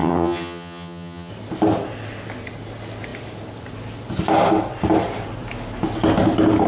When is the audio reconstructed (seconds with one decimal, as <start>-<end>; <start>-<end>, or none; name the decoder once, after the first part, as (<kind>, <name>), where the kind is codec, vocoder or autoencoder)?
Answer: 0.0-1.3 (vocoder, HiFi-GAN)